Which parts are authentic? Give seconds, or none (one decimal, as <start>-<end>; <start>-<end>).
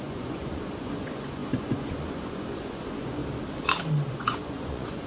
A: 3.2-4.1